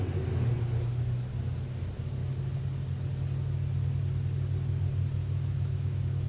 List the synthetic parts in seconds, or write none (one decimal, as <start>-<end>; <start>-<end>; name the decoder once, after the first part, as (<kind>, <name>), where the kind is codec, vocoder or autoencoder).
5.2-6.3 (autoencoder, DAC-VAE)